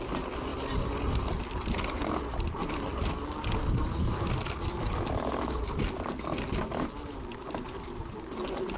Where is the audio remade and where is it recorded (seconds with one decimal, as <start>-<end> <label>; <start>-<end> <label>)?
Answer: 0.0-8.8 recorded